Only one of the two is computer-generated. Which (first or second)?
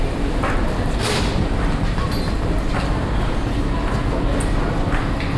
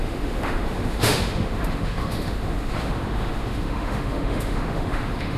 second